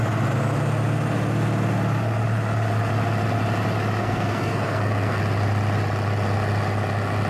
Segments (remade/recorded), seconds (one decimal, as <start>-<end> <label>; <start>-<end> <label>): 0.0-4.0 recorded; 4.0-5.2 remade; 5.2-7.3 recorded